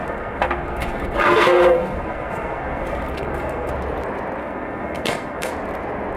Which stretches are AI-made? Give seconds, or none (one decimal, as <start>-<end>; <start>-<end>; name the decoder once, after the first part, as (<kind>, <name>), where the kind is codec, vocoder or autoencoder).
0.0-3.7 (codec, SNAC); 4.4-5.5